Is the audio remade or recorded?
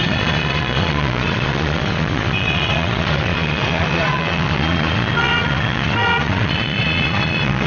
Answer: remade